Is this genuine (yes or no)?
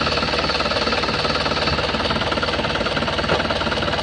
yes